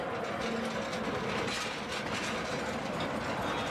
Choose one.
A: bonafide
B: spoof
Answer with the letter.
A